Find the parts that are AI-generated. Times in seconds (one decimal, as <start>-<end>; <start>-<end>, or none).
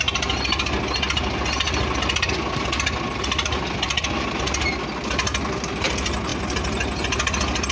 none